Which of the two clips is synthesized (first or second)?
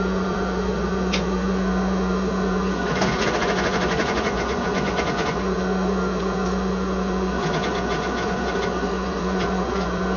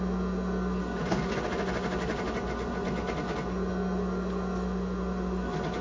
first